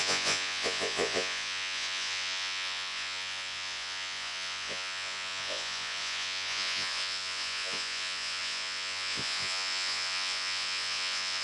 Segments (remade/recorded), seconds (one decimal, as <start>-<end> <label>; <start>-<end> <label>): 0.0-11.4 remade